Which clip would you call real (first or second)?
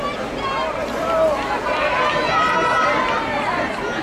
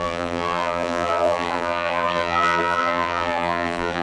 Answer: first